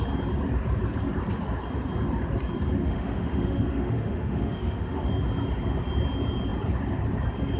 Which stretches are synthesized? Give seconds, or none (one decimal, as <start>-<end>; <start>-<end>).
2.8-5.1